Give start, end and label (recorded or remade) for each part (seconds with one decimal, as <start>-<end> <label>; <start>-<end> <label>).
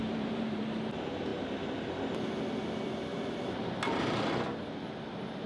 0.0-0.6 remade; 0.6-1.3 recorded; 1.3-1.9 remade; 1.9-3.1 recorded; 3.1-3.7 remade; 3.7-5.5 recorded